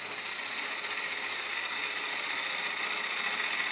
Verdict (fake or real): real